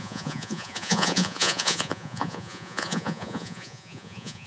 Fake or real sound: fake